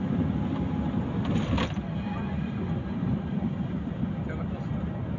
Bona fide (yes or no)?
yes